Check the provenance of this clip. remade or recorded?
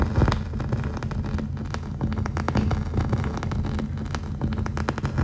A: recorded